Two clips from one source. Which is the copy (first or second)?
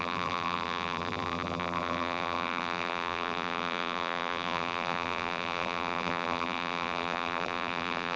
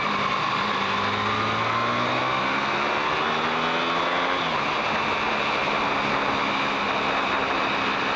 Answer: first